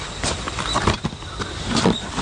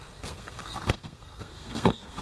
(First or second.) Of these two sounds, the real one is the first